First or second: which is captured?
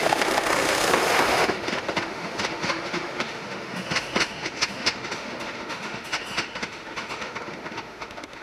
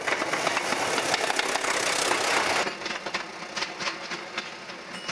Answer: second